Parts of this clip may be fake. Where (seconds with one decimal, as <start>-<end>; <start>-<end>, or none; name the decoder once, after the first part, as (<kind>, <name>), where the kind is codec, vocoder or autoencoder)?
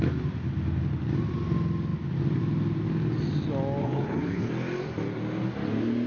3.8-4.5 (codec, HILCodec)